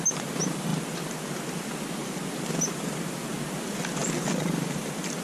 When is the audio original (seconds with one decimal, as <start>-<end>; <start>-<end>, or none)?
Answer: 0.0-4.0